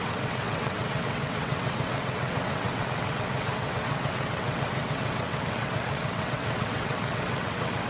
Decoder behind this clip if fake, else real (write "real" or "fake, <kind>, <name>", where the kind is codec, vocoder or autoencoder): fake, vocoder, WaveNeXt